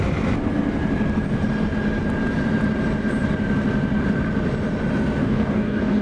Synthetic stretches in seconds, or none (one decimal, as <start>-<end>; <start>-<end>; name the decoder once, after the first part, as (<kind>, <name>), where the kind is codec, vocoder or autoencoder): 5.2-6.0 (codec, DAC)